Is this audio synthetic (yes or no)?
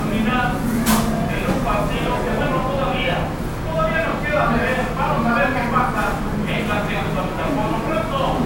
no